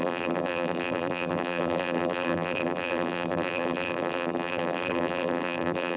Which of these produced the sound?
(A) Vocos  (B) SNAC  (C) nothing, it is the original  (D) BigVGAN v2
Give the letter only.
D